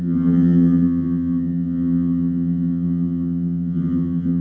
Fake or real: fake